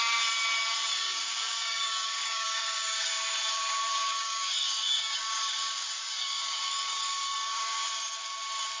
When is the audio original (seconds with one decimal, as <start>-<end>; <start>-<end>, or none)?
0.0-0.9; 3.1-4.0; 7.8-8.8